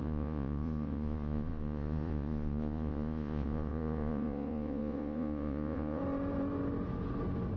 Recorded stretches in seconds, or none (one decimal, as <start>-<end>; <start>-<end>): 6.0-7.6